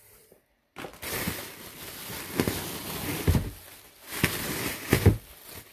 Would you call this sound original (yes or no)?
yes